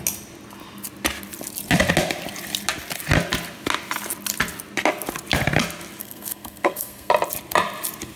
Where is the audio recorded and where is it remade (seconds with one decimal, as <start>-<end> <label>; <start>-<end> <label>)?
0.0-6.0 recorded; 6.0-7.1 remade; 7.1-8.2 recorded